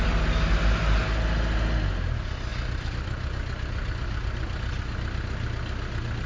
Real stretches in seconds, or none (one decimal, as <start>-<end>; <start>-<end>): 0.0-6.3